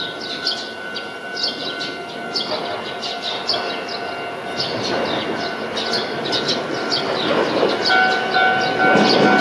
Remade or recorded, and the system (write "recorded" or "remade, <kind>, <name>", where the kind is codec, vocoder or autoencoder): recorded